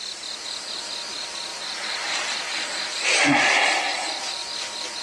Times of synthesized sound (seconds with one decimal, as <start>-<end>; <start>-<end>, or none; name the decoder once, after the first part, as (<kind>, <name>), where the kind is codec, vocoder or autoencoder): 0.0-5.0 (vocoder, BigVGAN v2)